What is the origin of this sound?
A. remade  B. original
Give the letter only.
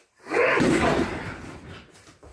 B